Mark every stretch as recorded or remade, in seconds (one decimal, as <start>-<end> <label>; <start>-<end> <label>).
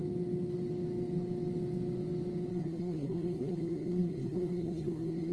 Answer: 0.0-2.5 recorded; 2.5-5.3 remade